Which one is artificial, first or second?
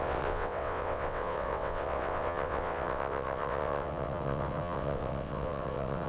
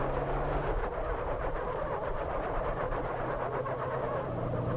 first